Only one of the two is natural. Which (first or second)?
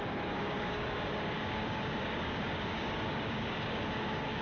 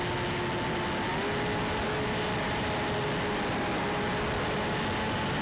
second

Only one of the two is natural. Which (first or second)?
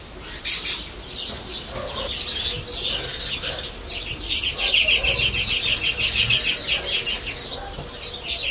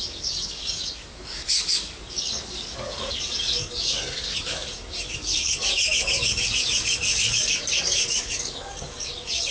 first